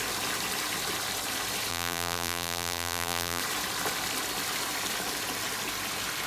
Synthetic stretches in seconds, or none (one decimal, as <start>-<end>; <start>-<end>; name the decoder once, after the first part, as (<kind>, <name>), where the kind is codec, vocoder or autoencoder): 1.7-3.4 (vocoder, BigVGAN v2)